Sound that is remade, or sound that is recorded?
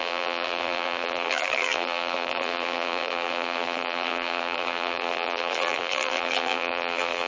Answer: remade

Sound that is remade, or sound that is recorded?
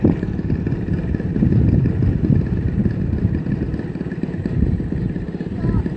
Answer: remade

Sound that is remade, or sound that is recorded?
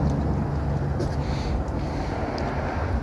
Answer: recorded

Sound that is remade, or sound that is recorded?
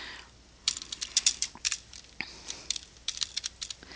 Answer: remade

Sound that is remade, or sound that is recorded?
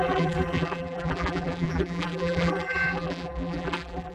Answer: remade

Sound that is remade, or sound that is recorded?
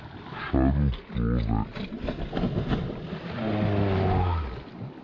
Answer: recorded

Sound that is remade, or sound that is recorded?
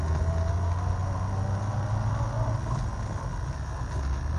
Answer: recorded